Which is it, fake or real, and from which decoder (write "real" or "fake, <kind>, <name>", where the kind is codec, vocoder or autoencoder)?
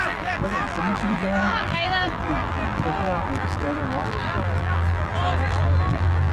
fake, vocoder, BigVGAN v2